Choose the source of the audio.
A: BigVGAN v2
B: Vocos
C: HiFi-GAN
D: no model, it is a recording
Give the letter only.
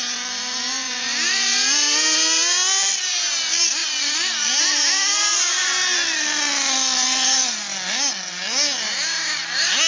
D